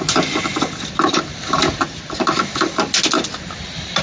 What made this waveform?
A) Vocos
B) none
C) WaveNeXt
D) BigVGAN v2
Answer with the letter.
B